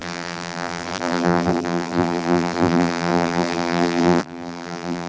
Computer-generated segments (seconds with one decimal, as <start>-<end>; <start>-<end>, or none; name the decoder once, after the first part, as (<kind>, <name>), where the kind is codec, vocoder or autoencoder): 0.0-5.1 (vocoder, BigVGAN v2)